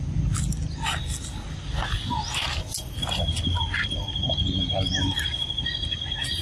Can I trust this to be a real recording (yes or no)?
yes